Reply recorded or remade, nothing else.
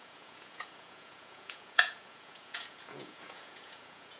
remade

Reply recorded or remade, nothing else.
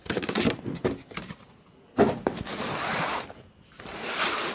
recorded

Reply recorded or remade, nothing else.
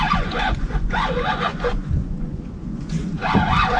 remade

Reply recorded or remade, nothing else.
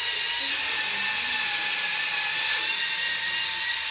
recorded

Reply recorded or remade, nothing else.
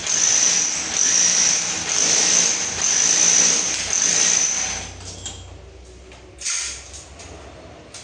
recorded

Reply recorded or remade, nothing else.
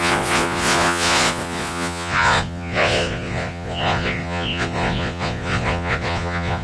remade